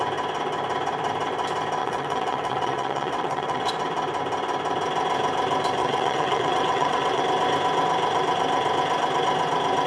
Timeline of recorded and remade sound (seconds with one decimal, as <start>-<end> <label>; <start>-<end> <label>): 0.0-1.8 recorded; 1.8-3.7 remade; 3.7-5.8 recorded; 5.8-7.2 remade; 7.2-9.9 recorded